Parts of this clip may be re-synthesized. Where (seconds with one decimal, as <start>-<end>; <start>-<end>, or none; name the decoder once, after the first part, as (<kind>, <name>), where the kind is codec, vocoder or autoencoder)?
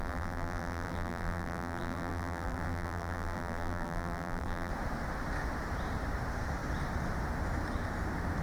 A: 0.0-4.7 (vocoder, BigVGAN v2)